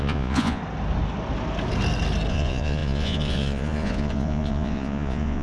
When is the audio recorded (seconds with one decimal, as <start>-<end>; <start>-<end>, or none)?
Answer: 0.6-2.3